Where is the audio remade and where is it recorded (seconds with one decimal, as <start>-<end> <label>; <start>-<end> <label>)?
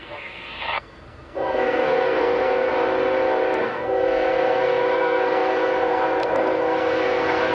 0.0-2.7 remade; 2.7-3.6 recorded; 3.6-7.5 remade